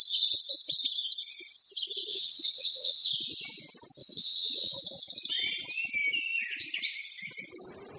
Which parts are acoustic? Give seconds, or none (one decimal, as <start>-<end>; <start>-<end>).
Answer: 0.0-2.1; 3.1-4.0; 4.8-8.0